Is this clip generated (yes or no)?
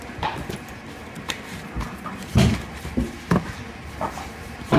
yes